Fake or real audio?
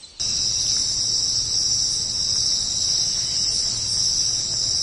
real